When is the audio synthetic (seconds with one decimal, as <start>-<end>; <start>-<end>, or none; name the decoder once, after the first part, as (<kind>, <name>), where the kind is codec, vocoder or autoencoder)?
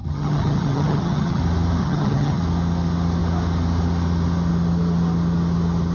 0.0-1.4 (vocoder, HiFi-GAN); 1.8-2.4